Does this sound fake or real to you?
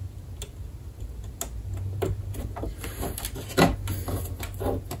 real